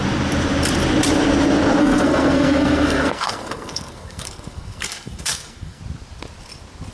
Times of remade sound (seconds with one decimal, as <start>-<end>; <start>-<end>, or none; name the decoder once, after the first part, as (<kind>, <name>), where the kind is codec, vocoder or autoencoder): 1.8-5.8 (codec, SNAC)

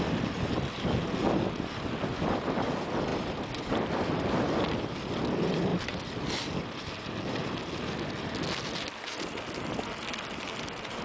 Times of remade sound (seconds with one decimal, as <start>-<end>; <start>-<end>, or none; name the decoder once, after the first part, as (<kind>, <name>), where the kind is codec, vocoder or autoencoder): none

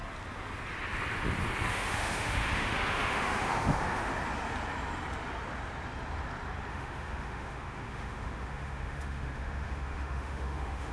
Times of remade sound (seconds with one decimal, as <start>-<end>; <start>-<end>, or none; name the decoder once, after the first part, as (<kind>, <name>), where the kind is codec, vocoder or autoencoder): 1.7-4.1 (autoencoder, DAC-VAE); 6.7-10.9

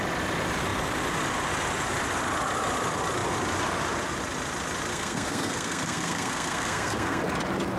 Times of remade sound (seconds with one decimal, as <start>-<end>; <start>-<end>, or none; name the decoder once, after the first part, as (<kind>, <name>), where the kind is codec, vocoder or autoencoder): 4.9-7.2 (codec, SNAC)